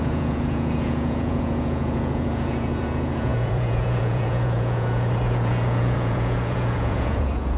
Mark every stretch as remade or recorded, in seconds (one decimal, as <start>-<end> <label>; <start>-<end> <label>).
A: 0.0-7.6 remade